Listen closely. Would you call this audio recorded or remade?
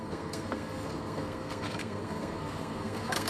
remade